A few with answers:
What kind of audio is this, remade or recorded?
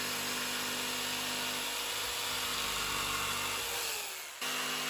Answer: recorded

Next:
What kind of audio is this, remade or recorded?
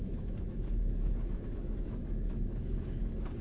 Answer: remade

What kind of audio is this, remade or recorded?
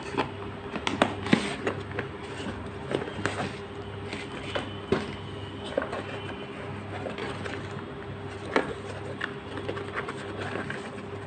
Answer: recorded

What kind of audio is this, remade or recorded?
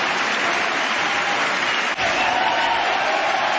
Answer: recorded